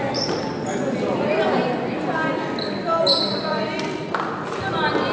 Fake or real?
real